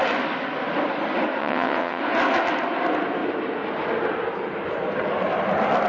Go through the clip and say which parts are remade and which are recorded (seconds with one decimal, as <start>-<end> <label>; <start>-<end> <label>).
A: 0.0-1.4 recorded; 1.4-2.0 remade; 2.0-5.9 recorded